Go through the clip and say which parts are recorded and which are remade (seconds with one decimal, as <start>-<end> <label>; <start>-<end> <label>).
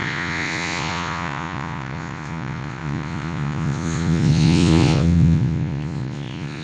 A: 0.0-6.6 remade